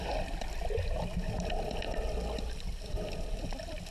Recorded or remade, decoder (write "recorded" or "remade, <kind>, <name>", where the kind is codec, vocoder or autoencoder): recorded